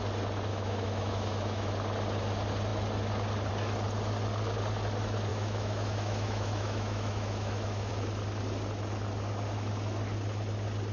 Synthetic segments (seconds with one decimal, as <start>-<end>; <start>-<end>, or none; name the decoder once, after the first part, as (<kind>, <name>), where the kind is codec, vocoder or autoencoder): 0.5-1.7 (autoencoder, DAC-VAE); 5.3-7.9

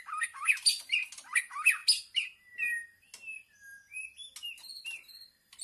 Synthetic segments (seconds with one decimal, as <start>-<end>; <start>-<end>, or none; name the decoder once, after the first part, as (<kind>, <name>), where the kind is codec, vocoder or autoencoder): none

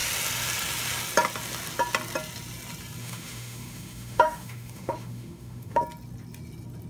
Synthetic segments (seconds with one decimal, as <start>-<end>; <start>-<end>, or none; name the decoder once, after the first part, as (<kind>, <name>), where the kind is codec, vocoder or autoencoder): 3.0-5.8 (autoencoder, DAC-VAE)